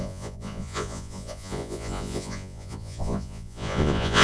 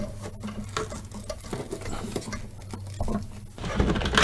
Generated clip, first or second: first